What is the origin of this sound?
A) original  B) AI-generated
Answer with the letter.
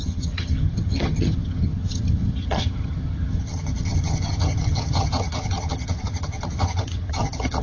B